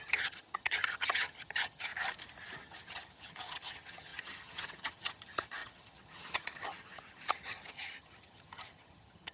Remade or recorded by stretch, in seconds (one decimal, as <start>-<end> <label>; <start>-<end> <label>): 0.0-1.9 remade; 1.9-2.6 recorded; 2.6-9.3 remade

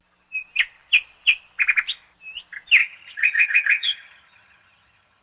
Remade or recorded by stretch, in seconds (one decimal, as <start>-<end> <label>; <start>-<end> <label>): 0.0-2.8 recorded; 2.8-5.2 remade

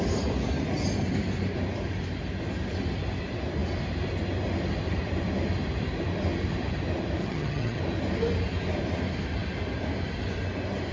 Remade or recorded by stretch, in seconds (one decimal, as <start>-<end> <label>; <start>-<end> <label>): 0.0-7.2 recorded; 7.2-7.8 remade; 7.8-10.9 recorded